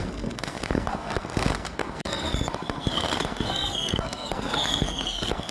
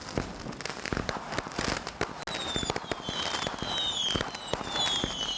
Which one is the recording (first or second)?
second